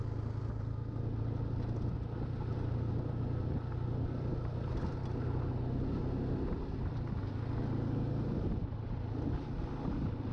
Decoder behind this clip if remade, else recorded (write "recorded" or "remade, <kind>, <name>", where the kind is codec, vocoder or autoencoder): recorded